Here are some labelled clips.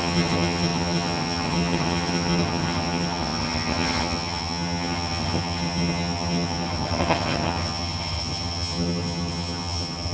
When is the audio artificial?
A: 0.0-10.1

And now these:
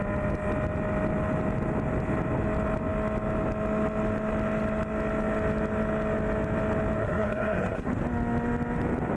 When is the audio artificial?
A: 7.0-7.9

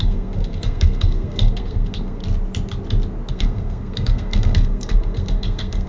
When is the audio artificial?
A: 0.0-2.2; 3.3-5.9